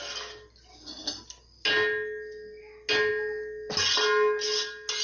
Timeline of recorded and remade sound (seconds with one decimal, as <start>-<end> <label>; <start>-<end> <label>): 0.0-5.0 recorded

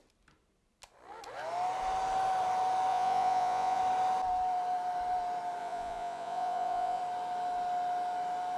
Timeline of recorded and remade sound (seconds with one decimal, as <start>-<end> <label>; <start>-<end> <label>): 0.0-2.9 recorded; 2.9-3.8 remade; 3.8-5.6 recorded; 5.6-7.0 remade; 7.0-8.6 recorded

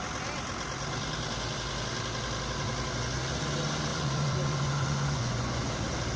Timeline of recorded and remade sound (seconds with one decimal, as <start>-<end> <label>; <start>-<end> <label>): 0.0-3.9 recorded; 3.9-5.7 remade; 5.7-6.2 recorded

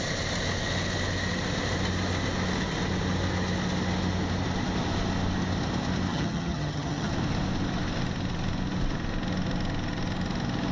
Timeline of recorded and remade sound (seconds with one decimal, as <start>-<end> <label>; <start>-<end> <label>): 0.0-6.1 recorded; 6.1-7.1 remade; 7.1-10.7 recorded

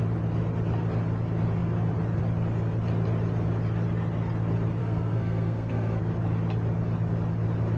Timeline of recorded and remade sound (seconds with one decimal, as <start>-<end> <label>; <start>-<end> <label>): 0.0-4.8 recorded; 4.8-6.0 remade; 6.0-7.8 recorded